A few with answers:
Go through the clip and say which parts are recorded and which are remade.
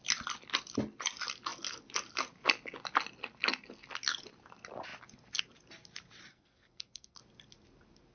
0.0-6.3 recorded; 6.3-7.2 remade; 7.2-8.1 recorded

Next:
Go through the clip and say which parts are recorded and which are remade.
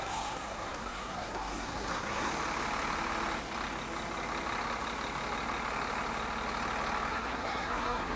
0.0-2.3 remade; 2.3-7.1 recorded; 7.1-8.2 remade